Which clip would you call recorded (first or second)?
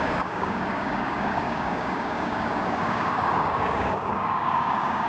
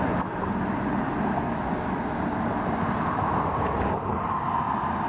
second